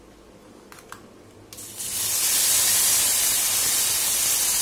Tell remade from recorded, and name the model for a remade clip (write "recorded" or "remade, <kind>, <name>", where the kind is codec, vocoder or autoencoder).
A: recorded